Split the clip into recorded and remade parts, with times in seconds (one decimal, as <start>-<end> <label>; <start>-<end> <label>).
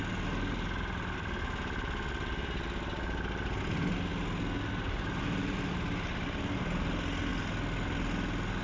0.0-8.6 recorded